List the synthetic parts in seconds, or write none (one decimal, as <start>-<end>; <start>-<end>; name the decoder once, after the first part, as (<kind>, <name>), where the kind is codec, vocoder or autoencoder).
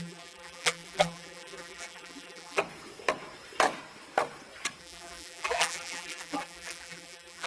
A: 0.0-2.6 (vocoder, BigVGAN v2); 4.8-7.5